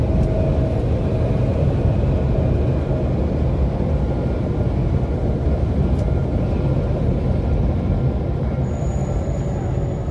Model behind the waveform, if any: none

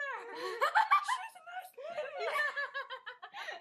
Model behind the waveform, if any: none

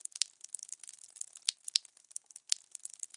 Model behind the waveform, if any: none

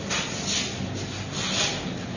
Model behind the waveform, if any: none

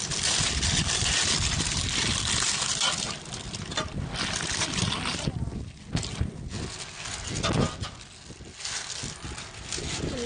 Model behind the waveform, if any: none